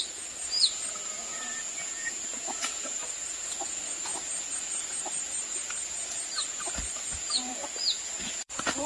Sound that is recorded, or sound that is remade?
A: remade